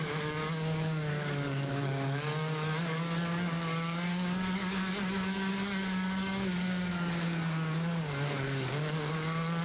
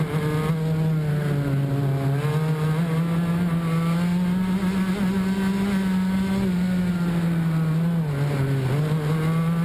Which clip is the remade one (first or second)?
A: first